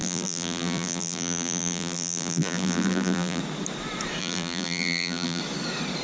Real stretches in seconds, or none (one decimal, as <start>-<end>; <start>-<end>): 3.4-4.2; 5.4-6.0